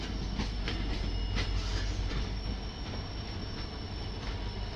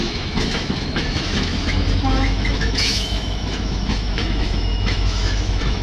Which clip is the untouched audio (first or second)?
first